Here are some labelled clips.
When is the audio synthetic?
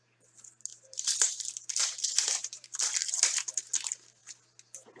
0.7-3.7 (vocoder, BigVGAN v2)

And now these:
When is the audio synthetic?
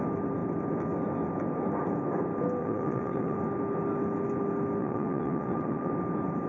2.6-3.4 (vocoder, Vocos); 4.8-5.9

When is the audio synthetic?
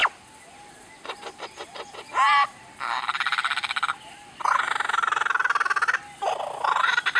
none